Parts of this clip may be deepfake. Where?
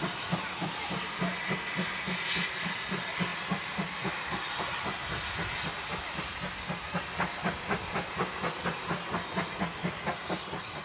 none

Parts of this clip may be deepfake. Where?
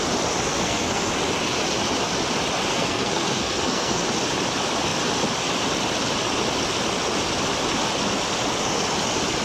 0.5-1.1 (codec, SNAC); 2.7-4.0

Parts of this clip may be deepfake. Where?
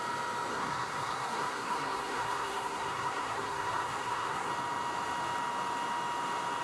0.5-4.5 (codec, SNAC)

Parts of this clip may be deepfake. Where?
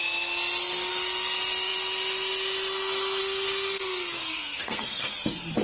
3.2-5.1 (codec, SNAC)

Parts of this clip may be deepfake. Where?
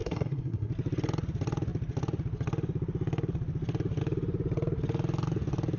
0.0-0.7 (codec, SNAC)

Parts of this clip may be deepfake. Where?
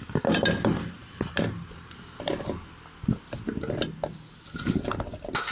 none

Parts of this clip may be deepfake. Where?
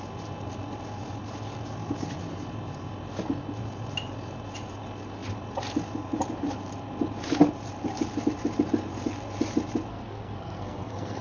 9.9-11.2 (codec, SNAC)